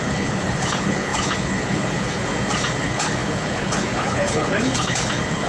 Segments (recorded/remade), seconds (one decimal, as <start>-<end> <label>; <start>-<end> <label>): 0.0-2.3 remade; 2.3-2.8 recorded; 2.8-5.5 remade